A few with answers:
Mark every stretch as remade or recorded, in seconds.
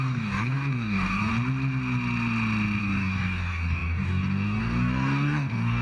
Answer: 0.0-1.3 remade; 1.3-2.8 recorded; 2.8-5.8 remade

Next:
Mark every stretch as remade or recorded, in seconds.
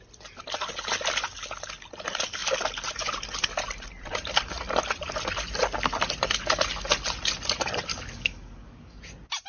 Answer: 0.0-7.9 recorded; 7.9-9.0 remade; 9.0-9.5 recorded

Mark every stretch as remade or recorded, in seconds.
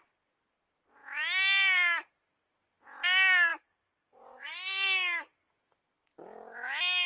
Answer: 0.0-3.5 recorded; 3.5-5.5 remade; 5.5-7.1 recorded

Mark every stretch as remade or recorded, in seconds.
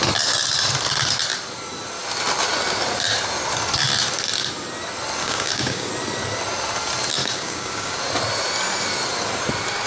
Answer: 0.0-5.2 recorded; 5.2-5.9 remade; 5.9-7.2 recorded; 7.2-8.0 remade; 8.0-9.9 recorded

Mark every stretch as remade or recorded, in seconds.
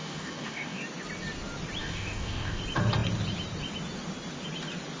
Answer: 0.0-0.8 remade; 0.8-1.8 recorded; 1.8-2.6 remade; 2.6-5.0 recorded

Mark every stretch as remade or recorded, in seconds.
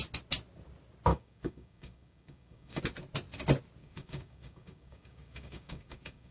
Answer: 0.0-1.1 recorded; 1.1-2.8 remade; 2.8-3.8 recorded; 3.8-6.3 remade